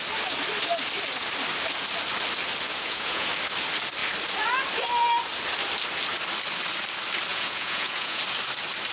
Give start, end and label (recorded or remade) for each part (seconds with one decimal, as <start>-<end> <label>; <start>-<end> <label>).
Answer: 0.0-2.7 recorded; 2.7-3.3 remade; 3.3-7.3 recorded; 7.3-8.2 remade; 8.2-8.9 recorded